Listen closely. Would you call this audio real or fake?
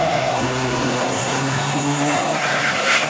fake